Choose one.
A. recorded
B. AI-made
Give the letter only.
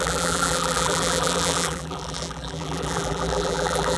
B